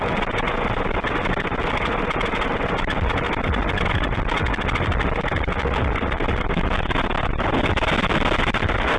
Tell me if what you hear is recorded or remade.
recorded